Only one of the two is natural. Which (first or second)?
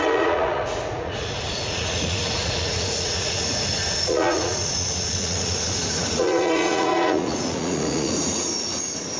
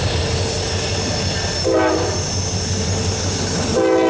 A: second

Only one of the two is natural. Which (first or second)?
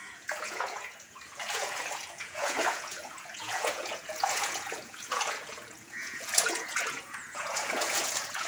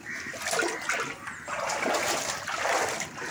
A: second